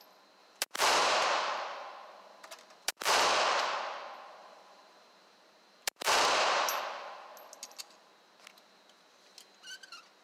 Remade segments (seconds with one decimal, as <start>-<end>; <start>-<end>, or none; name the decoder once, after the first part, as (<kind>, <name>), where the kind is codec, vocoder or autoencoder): 0.4-3.3 (vocoder, BigVGAN v2); 4.4-6.8